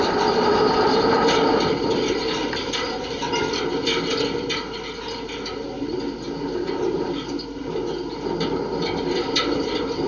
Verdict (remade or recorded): recorded